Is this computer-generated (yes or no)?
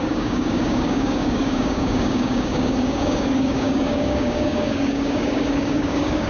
yes